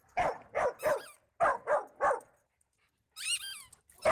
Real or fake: real